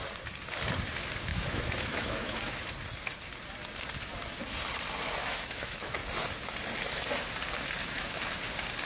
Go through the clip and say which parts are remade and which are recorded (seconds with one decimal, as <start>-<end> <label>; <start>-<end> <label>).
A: 0.0-1.3 recorded; 1.3-2.7 remade; 2.7-5.2 recorded; 5.2-6.0 remade; 6.0-7.8 recorded; 7.8-8.3 remade; 8.3-8.9 recorded

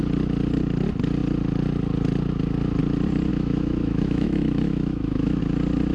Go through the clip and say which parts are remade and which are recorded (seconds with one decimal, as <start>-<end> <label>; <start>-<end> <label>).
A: 0.0-3.3 recorded; 3.3-5.4 remade; 5.4-5.9 recorded

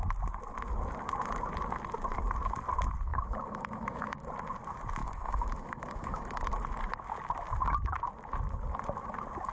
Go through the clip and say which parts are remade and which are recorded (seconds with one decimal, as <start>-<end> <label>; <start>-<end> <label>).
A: 0.0-3.1 recorded; 3.1-4.3 remade; 4.3-5.0 recorded; 5.0-6.5 remade; 6.5-9.5 recorded

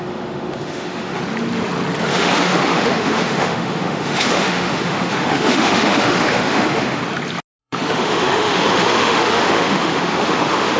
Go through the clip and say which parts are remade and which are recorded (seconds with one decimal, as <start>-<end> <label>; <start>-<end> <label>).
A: 0.0-1.2 remade; 1.2-2.0 recorded; 2.0-7.0 remade; 7.0-7.6 recorded; 7.6-10.8 remade